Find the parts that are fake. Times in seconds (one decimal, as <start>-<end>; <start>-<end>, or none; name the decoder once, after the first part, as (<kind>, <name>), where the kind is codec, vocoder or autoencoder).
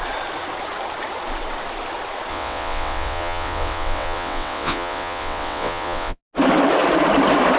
2.3-6.2 (vocoder, WaveNeXt)